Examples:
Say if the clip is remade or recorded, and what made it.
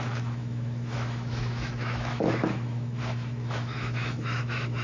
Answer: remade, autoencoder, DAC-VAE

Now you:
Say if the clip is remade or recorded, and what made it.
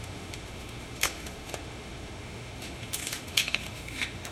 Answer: remade, autoencoder, DAC-VAE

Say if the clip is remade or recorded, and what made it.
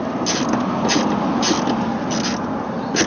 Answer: recorded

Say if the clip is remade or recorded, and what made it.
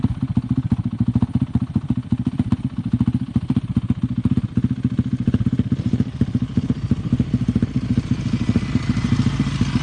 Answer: remade, vocoder, BigVGAN v2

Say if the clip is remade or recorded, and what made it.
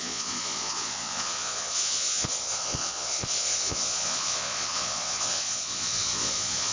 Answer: remade, vocoder, Vocos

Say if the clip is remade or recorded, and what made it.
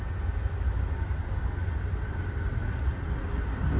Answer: recorded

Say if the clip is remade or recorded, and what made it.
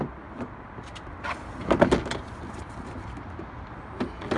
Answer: recorded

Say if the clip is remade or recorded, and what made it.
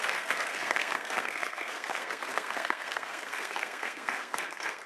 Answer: remade, codec, SNAC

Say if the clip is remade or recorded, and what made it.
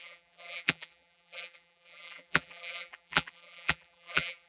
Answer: remade, vocoder, BigVGAN v2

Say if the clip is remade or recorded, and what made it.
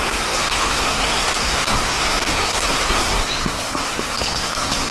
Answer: remade, codec, SNAC